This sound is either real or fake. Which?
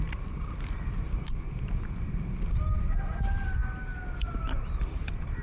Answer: real